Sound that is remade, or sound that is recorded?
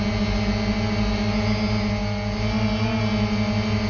recorded